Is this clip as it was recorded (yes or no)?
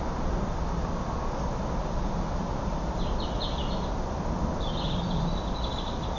yes